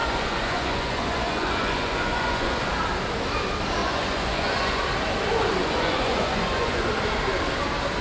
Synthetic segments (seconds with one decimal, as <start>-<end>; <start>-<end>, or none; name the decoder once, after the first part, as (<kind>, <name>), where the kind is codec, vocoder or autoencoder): 0.0-2.7 (vocoder, Vocos); 3.8-4.8; 5.6-6.9

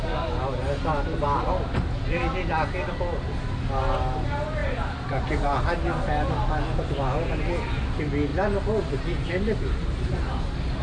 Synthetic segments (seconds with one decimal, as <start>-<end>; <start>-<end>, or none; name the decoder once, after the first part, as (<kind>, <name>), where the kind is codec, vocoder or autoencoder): none

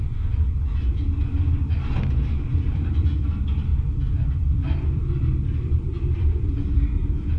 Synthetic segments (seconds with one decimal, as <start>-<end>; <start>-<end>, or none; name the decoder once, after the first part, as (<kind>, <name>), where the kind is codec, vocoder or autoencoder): 2.5-3.2 (vocoder, BigVGAN v2); 3.7-6.5

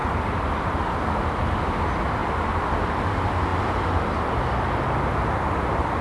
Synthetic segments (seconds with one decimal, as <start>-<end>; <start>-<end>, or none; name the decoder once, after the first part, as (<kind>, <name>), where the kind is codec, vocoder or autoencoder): 0.0-0.6 (vocoder, BigVGAN v2); 2.2-2.9

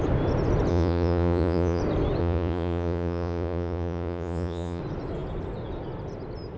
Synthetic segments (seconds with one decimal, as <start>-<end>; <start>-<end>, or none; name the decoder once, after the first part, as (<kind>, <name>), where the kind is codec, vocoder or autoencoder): 0.7-1.8 (vocoder, Vocos); 2.2-4.8

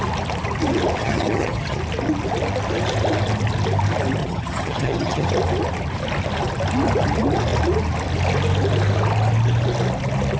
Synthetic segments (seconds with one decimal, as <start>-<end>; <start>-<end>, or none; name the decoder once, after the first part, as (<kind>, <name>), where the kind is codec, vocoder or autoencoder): 1.0-1.8 (vocoder, HiFi-GAN); 4.2-5.3

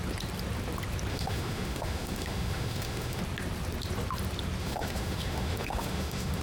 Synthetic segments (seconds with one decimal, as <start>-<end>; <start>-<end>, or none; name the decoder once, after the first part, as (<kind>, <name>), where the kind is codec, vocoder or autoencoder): 1.1-3.2 (autoencoder, DAC-VAE); 4.6-6.4